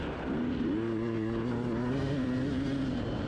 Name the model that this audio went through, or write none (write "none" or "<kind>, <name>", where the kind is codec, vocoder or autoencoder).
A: none